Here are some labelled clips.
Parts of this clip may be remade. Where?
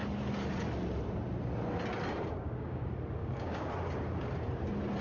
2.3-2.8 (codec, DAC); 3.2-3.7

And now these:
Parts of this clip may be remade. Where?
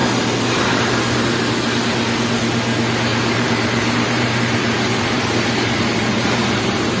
3.1-7.0 (vocoder, BigVGAN v2)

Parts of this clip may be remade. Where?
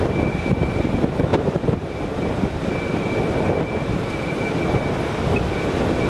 none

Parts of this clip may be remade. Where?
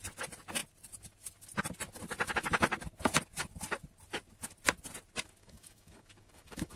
5.4-6.8 (codec, DAC)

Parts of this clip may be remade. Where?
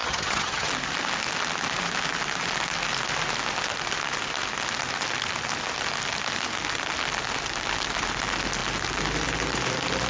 0.0-0.7 (vocoder, HiFi-GAN)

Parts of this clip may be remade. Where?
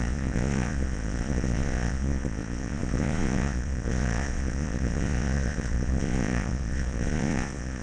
0.0-7.8 (vocoder, Vocos)